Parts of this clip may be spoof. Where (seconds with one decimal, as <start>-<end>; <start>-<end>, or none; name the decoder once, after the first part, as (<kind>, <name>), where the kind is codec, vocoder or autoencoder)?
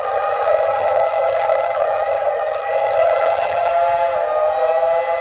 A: 0.0-3.7 (vocoder, HiFi-GAN)